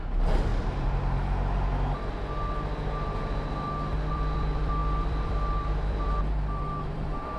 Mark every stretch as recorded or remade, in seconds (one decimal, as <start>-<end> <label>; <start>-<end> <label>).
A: 0.0-0.5 remade; 0.5-4.1 recorded; 4.1-7.4 remade